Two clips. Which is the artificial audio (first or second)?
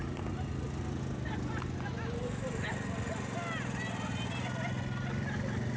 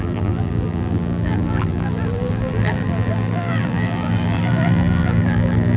second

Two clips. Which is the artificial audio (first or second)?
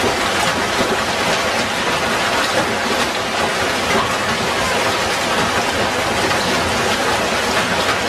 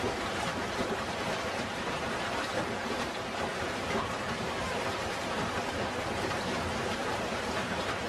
second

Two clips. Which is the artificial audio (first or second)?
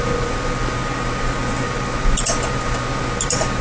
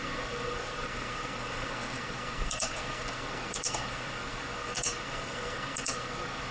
second